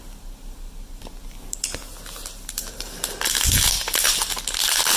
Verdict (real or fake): real